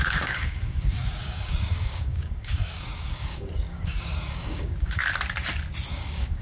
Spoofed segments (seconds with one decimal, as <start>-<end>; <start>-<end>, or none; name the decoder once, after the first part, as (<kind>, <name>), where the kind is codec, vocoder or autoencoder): 0.0-5.0 (codec, DAC); 5.9-6.4